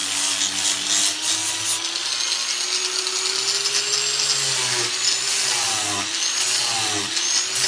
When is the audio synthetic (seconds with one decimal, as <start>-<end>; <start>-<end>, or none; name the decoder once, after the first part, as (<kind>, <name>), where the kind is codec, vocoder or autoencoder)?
none